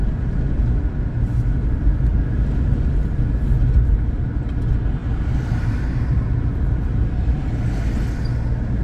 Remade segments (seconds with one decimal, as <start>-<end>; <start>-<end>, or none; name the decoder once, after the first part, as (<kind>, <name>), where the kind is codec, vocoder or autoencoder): 5.0-7.5 (vocoder, BigVGAN v2)